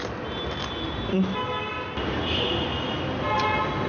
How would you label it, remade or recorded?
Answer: recorded